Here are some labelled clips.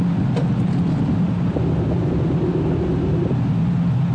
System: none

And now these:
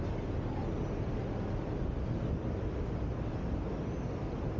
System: none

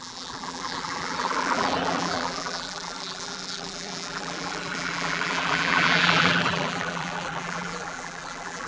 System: vocoder, BigVGAN v2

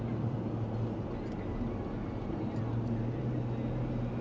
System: none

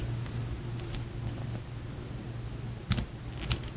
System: none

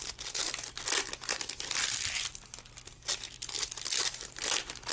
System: none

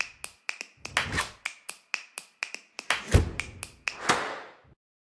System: none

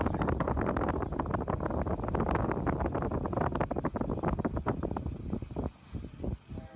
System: none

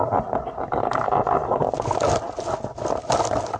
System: none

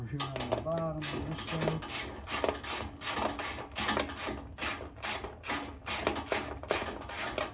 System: none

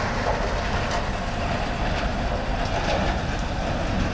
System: none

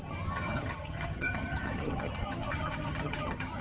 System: vocoder, HiFi-GAN